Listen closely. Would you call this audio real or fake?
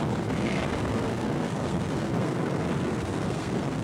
fake